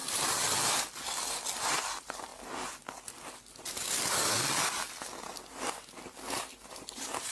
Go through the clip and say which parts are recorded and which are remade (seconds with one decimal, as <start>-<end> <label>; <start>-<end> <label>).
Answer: 0.0-1.8 recorded; 1.8-2.3 remade; 2.3-6.7 recorded; 6.7-7.3 remade